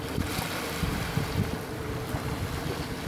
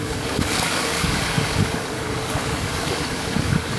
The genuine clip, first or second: first